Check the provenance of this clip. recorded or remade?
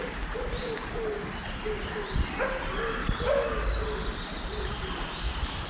recorded